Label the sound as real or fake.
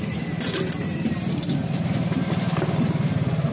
fake